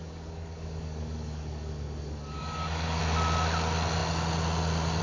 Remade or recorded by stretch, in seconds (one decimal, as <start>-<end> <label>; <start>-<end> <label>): 0.0-3.0 remade; 3.0-5.0 recorded